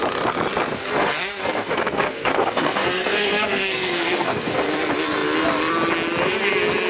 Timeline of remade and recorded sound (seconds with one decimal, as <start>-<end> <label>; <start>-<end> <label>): 0.0-0.8 recorded; 0.8-4.6 remade; 4.6-6.9 recorded